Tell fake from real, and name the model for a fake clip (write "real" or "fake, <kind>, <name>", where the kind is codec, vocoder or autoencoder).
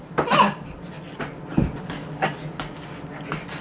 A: real